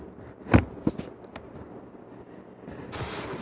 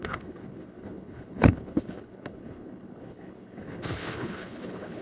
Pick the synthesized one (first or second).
second